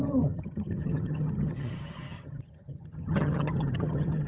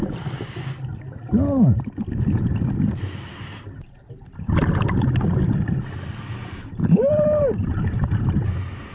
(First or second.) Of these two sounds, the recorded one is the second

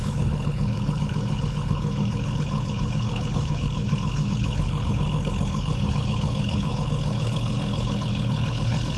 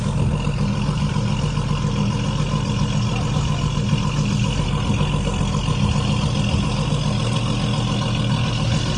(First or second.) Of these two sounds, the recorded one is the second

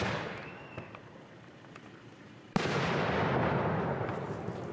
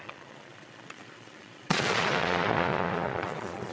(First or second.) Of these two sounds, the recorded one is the first